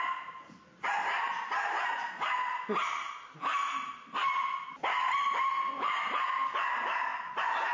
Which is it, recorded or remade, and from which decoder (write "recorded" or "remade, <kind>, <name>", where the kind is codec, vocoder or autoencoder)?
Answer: recorded